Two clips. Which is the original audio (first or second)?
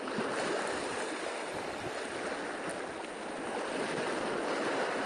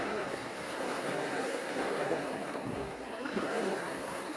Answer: first